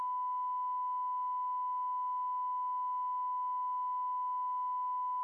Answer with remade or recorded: recorded